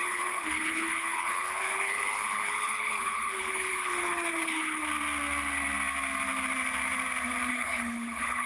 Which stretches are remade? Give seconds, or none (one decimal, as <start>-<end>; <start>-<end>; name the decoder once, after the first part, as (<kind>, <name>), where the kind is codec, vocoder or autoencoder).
0.0-4.8 (codec, HILCodec); 7.5-8.5